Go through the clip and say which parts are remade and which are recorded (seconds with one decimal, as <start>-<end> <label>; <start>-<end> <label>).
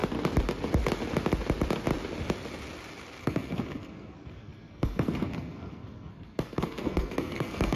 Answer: 0.0-3.2 recorded; 3.2-7.8 remade